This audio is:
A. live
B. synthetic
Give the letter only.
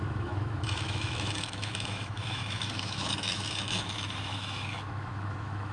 B